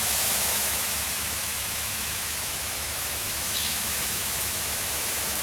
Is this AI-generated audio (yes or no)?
yes